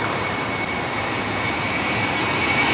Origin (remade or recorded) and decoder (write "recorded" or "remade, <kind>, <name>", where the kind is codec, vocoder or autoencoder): remade, vocoder, BigVGAN v2